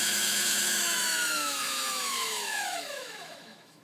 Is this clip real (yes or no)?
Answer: no